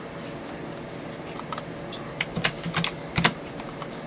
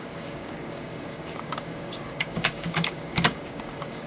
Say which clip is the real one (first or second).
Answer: first